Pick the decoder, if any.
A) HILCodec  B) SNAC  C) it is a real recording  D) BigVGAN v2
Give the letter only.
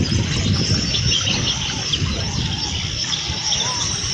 C